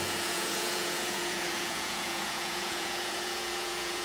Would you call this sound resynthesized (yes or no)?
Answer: yes